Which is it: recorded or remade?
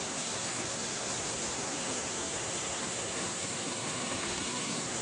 remade